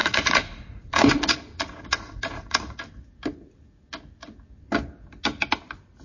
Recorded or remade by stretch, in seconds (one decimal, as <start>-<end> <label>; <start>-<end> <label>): 0.0-2.8 remade; 2.8-6.0 recorded